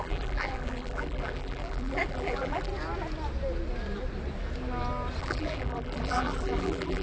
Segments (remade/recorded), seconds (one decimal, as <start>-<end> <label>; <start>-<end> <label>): 0.0-2.7 remade; 2.7-5.2 recorded; 5.2-7.0 remade